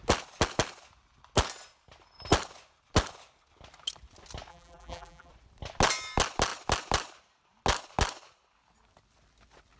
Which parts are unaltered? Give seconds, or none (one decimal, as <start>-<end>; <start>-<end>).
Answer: 0.0-4.5; 5.3-9.8